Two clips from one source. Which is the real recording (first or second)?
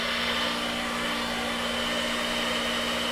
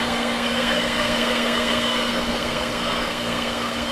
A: first